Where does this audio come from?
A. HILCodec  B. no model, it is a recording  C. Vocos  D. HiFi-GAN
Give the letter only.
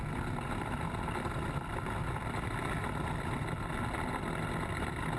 B